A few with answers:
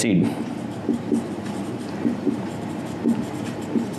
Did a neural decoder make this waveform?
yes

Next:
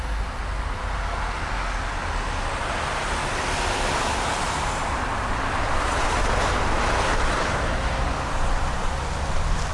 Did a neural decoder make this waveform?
no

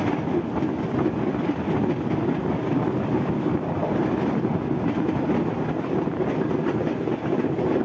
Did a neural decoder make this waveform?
no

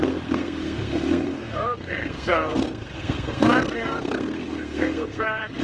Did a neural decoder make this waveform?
yes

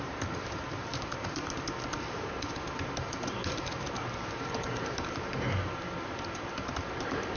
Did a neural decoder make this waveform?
yes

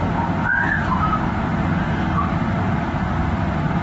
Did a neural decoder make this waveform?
no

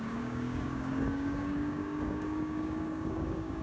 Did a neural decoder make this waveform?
yes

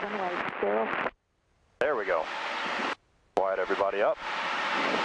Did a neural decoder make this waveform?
no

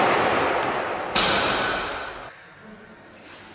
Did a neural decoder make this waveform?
no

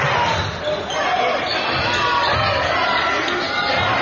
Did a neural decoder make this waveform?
no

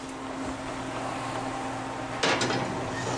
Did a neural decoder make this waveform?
no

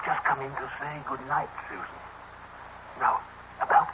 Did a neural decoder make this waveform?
no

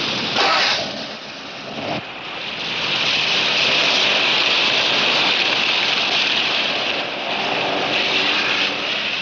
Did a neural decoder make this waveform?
yes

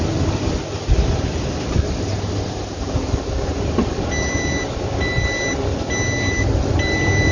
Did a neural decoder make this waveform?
no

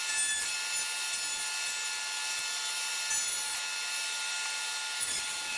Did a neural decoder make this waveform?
no